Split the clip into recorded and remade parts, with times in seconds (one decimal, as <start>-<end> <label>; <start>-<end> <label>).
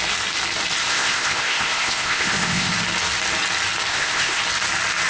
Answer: 0.0-0.8 recorded; 0.8-2.7 remade; 2.7-3.9 recorded; 3.9-4.4 remade; 4.4-5.1 recorded